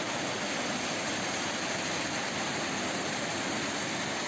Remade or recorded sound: recorded